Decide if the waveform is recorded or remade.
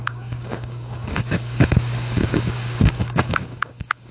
remade